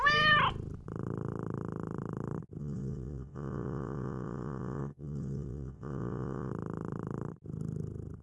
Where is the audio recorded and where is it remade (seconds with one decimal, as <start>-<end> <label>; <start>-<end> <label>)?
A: 0.0-2.6 recorded; 2.6-6.5 remade; 6.5-8.2 recorded